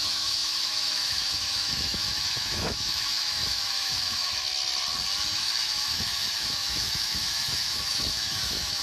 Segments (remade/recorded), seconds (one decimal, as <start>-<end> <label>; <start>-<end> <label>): 0.0-4.5 remade; 4.5-5.3 recorded; 5.3-8.8 remade